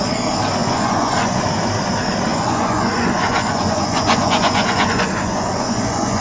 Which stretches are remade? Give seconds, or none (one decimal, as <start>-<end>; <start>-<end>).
0.6-1.4; 2.3-6.2

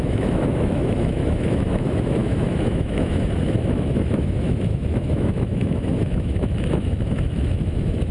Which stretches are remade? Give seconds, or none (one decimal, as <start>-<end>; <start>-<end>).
0.0-8.1

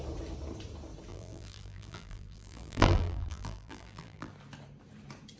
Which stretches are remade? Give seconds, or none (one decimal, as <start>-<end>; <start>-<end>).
1.1-4.3

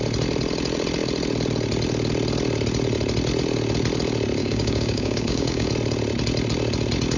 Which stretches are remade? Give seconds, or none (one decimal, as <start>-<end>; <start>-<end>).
4.4-5.7

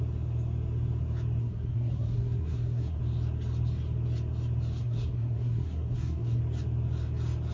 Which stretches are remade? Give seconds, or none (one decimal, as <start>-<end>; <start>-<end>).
1.4-3.0; 4.8-6.4

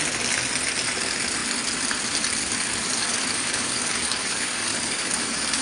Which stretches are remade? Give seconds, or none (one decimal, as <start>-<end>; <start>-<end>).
2.4-5.6

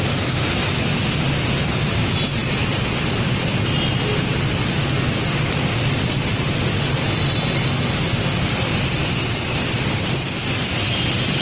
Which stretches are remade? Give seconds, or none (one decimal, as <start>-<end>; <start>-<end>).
none